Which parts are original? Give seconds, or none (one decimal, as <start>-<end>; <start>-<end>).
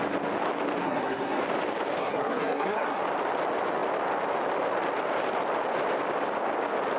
0.0-0.8; 1.4-2.0; 3.0-7.0